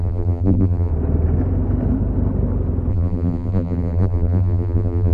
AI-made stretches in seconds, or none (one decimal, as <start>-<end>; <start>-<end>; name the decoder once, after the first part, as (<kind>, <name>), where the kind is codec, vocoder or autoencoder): 0.0-0.9 (vocoder, BigVGAN v2); 2.9-5.1